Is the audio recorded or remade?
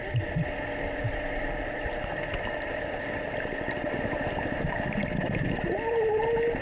recorded